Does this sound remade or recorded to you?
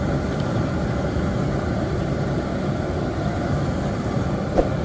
recorded